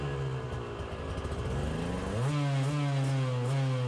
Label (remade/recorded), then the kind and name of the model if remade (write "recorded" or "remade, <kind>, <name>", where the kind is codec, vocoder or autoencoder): recorded